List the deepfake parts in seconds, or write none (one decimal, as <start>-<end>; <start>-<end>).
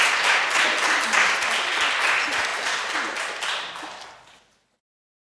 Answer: none